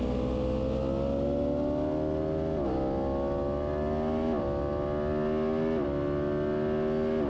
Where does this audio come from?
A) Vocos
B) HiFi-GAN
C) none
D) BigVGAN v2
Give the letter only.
C